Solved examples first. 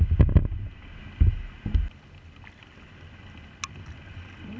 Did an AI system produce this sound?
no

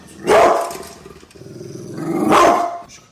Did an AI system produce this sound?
no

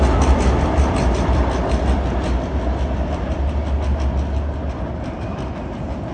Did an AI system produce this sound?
no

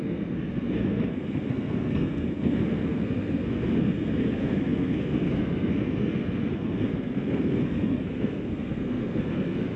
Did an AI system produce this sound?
yes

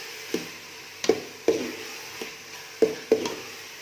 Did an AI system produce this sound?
no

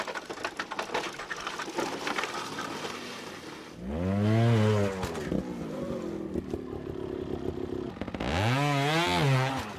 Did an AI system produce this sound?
no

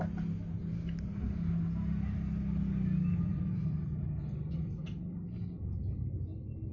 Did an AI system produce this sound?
no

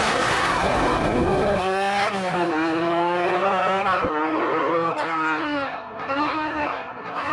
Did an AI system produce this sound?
yes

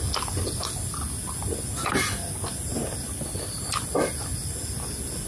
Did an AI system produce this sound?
no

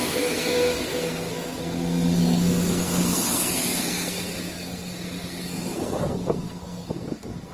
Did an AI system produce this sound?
yes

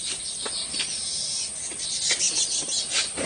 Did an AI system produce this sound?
no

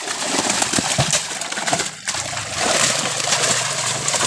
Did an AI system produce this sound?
no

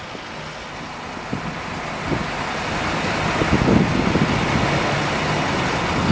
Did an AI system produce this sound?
no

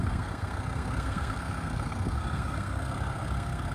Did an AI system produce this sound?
yes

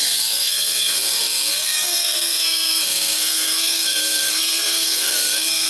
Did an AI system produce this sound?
yes